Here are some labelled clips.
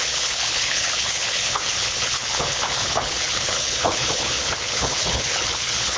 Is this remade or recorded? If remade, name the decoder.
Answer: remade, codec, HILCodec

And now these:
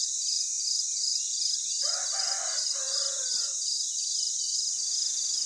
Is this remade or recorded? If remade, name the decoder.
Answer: recorded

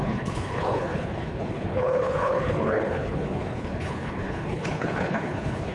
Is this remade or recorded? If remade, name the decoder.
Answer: remade, codec, HILCodec